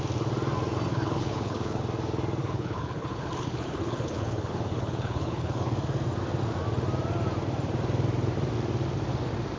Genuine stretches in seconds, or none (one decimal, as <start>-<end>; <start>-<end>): 0.0-0.9; 1.8-2.4; 5.7-9.6